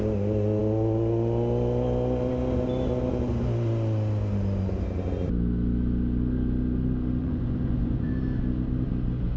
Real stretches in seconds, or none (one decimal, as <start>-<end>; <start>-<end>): 0.0-7.2; 8.1-9.4